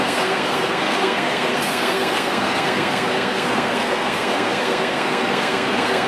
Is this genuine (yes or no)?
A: no